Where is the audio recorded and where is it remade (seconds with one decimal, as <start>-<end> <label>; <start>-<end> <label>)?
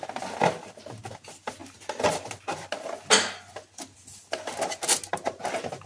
0.0-5.9 recorded